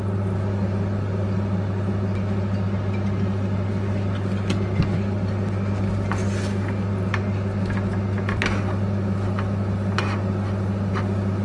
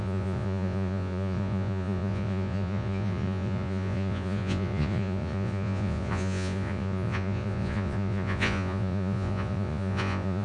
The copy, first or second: second